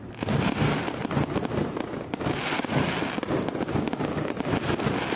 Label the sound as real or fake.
real